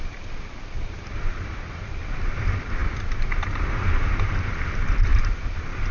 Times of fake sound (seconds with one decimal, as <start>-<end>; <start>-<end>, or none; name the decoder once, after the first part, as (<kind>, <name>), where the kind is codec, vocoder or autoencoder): 0.0-5.1 (vocoder, BigVGAN v2)